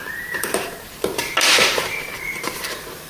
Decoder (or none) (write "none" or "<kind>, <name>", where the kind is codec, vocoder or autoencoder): vocoder, BigVGAN v2